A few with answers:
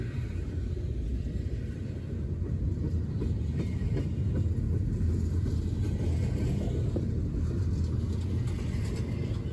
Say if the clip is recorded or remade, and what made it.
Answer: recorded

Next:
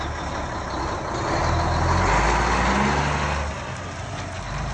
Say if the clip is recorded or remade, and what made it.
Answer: recorded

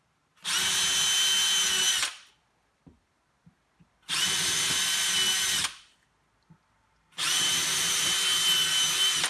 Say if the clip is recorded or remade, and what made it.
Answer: recorded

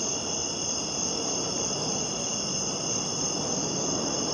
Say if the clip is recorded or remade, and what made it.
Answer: remade, vocoder, BigVGAN v2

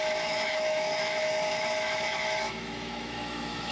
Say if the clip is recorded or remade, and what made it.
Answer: remade, autoencoder, DAC-VAE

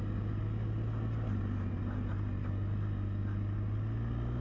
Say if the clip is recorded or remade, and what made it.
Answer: recorded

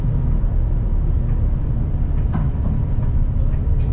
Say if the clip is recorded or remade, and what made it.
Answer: recorded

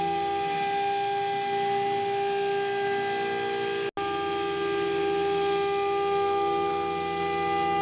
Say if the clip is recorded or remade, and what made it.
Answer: recorded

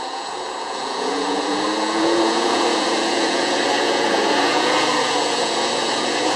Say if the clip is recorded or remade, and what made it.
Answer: remade, vocoder, Vocos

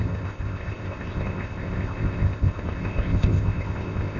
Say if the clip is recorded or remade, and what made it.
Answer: remade, codec, ZipCodec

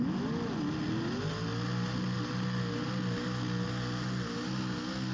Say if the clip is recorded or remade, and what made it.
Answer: recorded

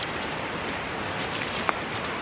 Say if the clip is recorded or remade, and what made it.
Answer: remade, vocoder, BigVGAN v2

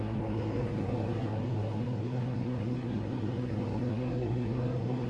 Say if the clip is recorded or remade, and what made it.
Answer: remade, codec, SNAC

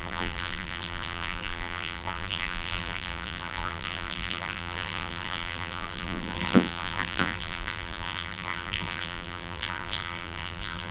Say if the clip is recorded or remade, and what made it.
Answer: remade, vocoder, BigVGAN v2